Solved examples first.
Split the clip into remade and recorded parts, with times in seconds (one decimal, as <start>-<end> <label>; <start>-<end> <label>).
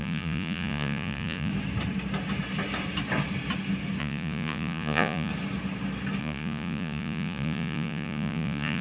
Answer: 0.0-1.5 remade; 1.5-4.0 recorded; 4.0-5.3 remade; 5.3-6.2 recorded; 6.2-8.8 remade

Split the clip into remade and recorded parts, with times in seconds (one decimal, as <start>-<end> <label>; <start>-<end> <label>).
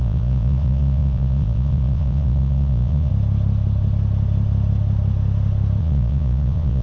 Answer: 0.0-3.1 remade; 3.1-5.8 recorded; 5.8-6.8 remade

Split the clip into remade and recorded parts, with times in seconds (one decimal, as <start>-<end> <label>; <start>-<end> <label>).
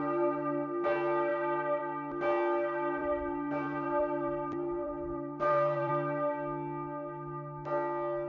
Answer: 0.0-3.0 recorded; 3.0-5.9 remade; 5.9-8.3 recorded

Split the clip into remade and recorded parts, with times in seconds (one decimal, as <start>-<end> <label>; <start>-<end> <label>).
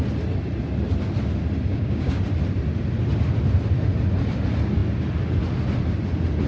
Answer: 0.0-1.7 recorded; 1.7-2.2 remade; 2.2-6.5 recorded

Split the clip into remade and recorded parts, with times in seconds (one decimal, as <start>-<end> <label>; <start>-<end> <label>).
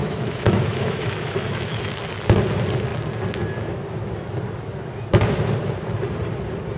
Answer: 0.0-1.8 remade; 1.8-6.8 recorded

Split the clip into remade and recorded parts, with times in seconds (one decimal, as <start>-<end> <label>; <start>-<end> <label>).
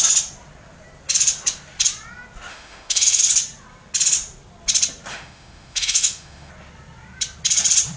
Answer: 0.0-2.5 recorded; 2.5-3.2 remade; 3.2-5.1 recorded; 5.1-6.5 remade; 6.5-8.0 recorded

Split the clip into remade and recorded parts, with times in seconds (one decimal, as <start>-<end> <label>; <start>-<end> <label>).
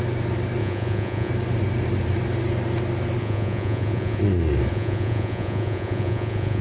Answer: 0.0-0.6 recorded; 0.6-1.3 remade; 1.3-3.2 recorded; 3.2-4.2 remade; 4.2-4.7 recorded; 4.7-6.6 remade